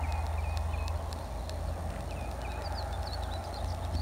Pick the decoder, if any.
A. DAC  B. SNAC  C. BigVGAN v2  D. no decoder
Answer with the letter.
D